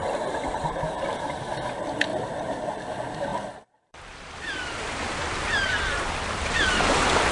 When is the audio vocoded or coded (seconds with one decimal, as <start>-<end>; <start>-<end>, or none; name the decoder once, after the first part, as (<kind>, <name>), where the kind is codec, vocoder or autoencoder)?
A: 2.1-2.8 (vocoder, BigVGAN v2); 3.3-6.4